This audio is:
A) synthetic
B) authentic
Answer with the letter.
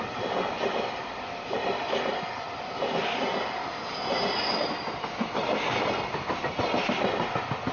B